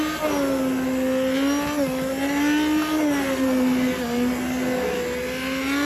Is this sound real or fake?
real